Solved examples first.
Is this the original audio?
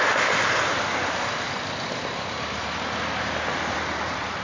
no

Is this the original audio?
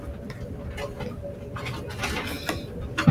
yes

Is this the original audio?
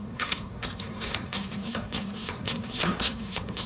no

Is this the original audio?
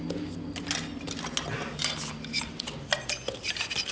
yes